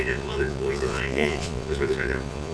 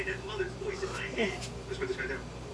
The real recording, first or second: second